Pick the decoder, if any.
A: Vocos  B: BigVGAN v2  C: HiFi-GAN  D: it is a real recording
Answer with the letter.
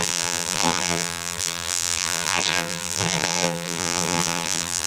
B